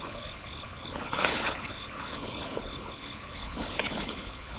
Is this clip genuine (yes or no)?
no